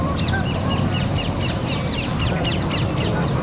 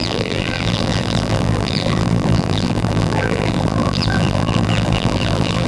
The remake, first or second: second